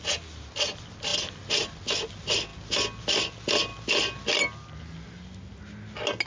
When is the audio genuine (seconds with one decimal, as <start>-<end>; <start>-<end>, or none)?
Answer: 0.0-6.3